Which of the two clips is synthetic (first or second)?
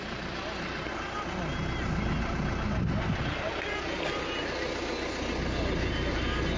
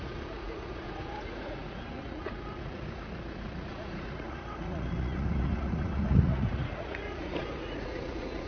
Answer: second